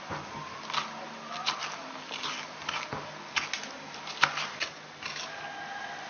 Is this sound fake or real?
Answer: real